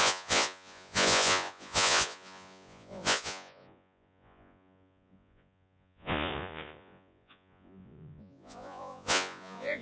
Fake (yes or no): yes